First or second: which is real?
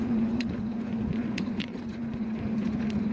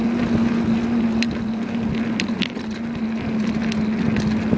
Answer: second